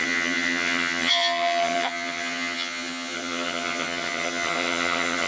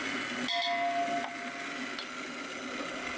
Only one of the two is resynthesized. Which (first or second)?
first